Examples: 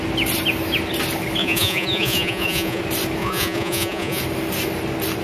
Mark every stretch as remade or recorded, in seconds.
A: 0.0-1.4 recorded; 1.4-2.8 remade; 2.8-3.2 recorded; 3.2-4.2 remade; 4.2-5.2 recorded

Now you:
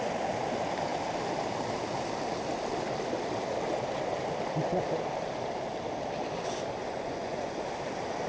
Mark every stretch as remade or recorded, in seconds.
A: 0.0-6.8 recorded; 6.8-7.6 remade; 7.6-8.3 recorded

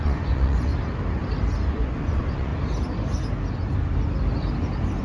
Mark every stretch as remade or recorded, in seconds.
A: 0.0-0.7 remade; 0.7-1.7 recorded; 1.7-2.5 remade; 2.5-5.0 recorded